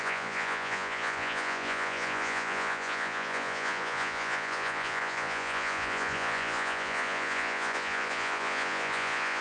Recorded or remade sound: remade